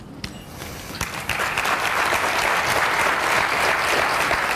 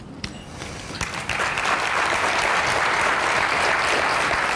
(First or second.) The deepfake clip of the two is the second